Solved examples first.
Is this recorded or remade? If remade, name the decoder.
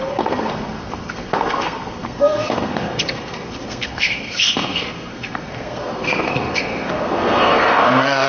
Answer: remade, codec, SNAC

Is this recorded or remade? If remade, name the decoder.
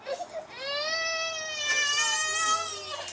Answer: recorded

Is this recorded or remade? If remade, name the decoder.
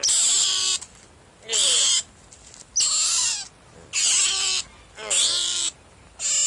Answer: recorded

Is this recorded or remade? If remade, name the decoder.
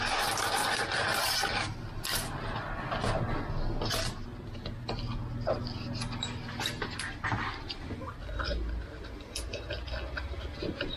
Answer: recorded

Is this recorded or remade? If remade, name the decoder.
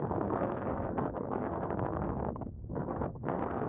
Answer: remade, codec, SNAC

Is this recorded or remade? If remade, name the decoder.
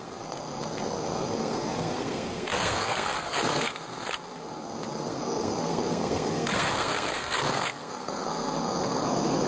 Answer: remade, codec, SNAC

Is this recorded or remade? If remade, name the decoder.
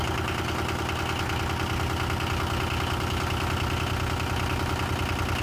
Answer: recorded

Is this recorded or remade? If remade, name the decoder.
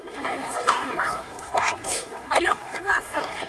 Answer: remade, codec, SNAC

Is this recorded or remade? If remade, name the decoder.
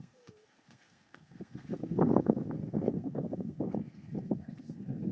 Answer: remade, codec, SNAC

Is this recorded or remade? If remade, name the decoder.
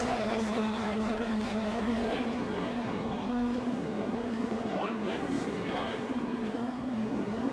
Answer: remade, codec, SNAC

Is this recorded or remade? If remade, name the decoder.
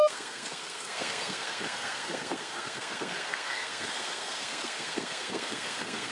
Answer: remade, codec, SNAC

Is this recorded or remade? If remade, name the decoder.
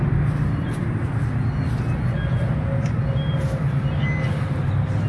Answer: recorded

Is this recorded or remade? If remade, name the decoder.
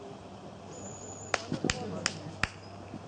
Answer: recorded